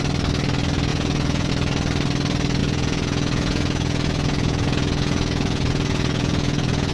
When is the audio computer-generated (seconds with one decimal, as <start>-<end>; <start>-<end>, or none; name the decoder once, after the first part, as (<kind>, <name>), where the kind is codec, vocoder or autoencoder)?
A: 0.9-1.5 (vocoder, Vocos); 2.6-6.9